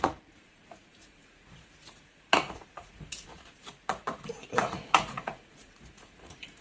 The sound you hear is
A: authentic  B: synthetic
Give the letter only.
B